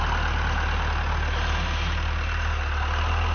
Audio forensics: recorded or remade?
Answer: recorded